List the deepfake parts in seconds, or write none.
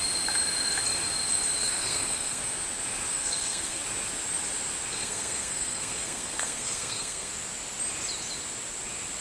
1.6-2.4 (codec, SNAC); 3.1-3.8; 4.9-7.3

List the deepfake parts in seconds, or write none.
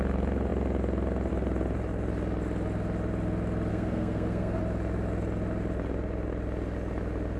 3.7-4.6 (codec, SNAC)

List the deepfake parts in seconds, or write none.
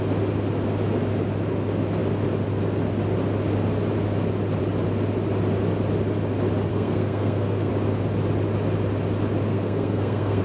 6.7-7.7 (codec, SNAC); 9.5-10.4